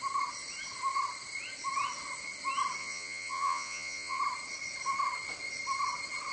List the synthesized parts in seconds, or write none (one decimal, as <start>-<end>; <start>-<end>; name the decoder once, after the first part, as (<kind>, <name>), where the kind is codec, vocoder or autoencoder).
2.8-4.2 (vocoder, Vocos)